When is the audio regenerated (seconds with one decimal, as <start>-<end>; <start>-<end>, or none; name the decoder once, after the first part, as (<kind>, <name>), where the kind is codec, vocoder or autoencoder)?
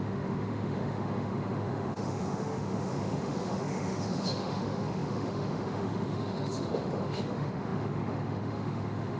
0.0-9.2 (autoencoder, DAC-VAE)